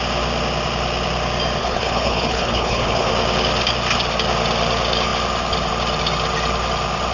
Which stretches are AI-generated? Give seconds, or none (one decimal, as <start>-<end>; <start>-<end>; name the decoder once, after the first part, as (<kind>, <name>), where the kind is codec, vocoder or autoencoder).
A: 1.6-3.1 (codec, HILCodec)